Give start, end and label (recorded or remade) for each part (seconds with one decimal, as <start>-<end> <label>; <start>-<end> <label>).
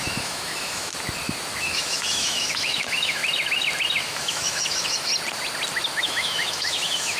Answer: 0.0-0.9 remade; 0.9-1.6 recorded; 1.6-3.2 remade; 3.2-4.0 recorded; 4.0-5.1 remade; 5.1-6.0 recorded; 6.0-7.2 remade